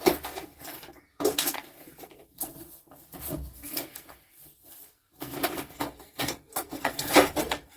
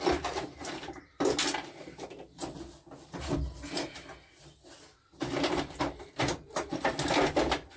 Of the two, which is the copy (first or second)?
first